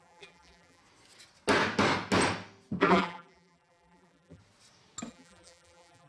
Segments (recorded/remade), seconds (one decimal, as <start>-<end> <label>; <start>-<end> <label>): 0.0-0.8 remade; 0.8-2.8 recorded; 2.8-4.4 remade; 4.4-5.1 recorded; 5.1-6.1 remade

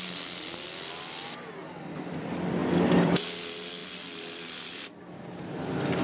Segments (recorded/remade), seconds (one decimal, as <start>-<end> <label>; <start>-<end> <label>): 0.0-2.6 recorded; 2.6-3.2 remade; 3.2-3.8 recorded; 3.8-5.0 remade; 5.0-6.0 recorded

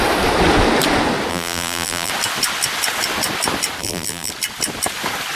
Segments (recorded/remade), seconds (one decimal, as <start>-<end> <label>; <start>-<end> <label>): 0.0-1.3 recorded; 1.3-2.1 remade; 2.1-3.8 recorded; 3.8-4.3 remade; 4.3-5.4 recorded

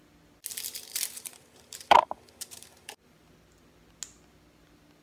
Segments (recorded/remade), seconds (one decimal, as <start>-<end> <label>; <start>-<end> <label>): 0.0-0.9 recorded; 0.9-3.3 remade; 3.3-5.0 recorded

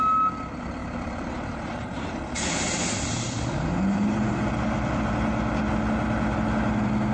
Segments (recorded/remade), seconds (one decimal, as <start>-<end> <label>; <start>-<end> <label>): 0.0-0.8 recorded; 0.8-5.1 remade; 5.1-7.1 recorded